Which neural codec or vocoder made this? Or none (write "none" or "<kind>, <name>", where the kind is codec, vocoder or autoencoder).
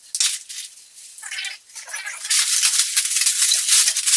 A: none